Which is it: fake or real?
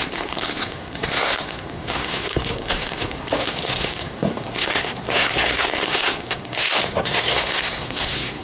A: fake